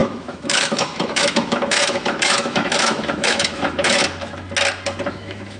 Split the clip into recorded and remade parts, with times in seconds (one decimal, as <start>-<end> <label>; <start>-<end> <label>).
0.0-4.0 remade; 4.0-5.1 recorded; 5.1-5.6 remade